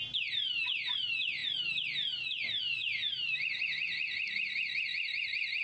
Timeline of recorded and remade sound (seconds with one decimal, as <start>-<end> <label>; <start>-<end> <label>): 0.0-5.6 recorded